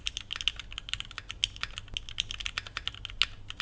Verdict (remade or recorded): recorded